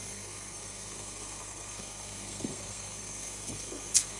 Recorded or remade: remade